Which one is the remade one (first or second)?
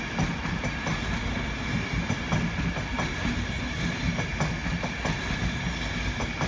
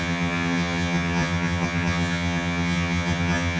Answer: second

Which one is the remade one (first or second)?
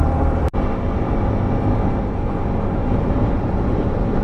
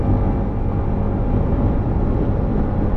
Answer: first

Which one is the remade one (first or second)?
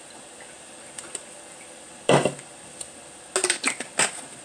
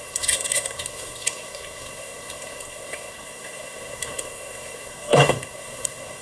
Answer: second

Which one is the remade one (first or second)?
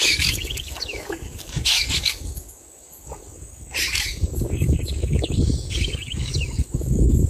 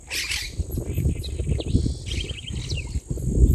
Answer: first